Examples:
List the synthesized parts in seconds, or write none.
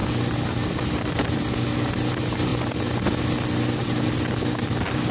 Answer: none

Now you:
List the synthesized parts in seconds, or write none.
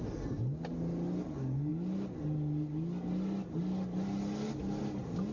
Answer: none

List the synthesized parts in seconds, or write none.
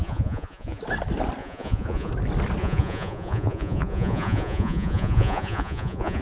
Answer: 0.0-0.8 (vocoder, Vocos); 1.4-2.1; 2.6-6.2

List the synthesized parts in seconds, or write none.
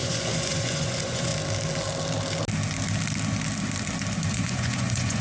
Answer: 0.0-1.3 (vocoder, Vocos); 4.3-5.2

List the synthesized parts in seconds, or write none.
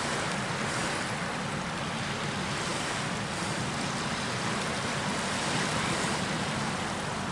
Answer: none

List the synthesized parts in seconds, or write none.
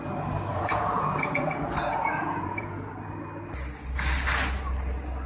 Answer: 0.5-2.9 (vocoder, Vocos)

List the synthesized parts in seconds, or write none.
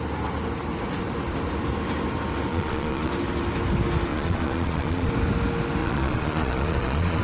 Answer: 2.5-3.1 (vocoder, Vocos); 4.1-5.1; 5.8-7.2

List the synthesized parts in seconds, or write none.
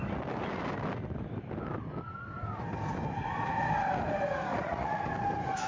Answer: 4.5-5.1 (vocoder, Vocos)